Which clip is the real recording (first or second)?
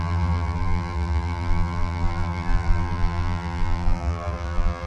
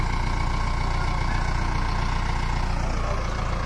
second